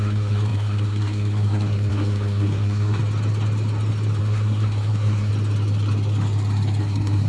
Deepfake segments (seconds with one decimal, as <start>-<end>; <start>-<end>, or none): 0.0-3.0; 4.2-5.3; 6.8-7.3